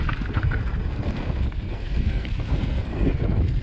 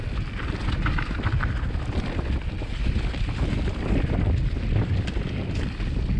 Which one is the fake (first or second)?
first